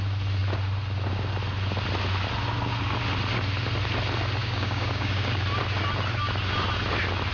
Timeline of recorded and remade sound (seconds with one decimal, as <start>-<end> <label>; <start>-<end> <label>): 0.0-4.4 recorded; 4.4-5.4 remade; 5.4-7.3 recorded